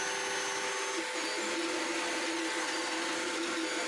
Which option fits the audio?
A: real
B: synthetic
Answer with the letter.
A